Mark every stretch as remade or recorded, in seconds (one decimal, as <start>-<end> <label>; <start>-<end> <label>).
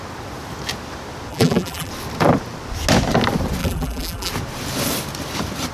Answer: 0.0-1.3 recorded; 1.3-1.9 remade; 1.9-3.6 recorded; 3.6-4.3 remade; 4.3-5.7 recorded